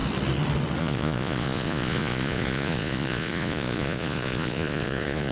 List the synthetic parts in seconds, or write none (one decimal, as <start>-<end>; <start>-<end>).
0.8-5.3